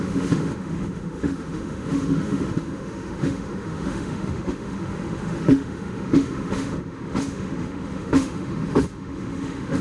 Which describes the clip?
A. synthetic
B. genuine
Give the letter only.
A